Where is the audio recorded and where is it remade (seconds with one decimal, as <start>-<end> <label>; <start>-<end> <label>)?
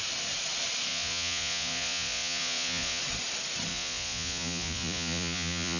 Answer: 0.0-0.9 recorded; 0.9-3.0 remade; 3.0-3.7 recorded; 3.7-5.8 remade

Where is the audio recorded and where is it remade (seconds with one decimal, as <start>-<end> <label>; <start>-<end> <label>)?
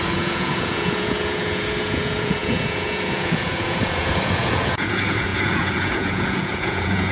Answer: 0.0-7.1 remade